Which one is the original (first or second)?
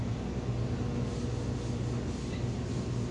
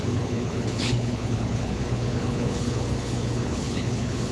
first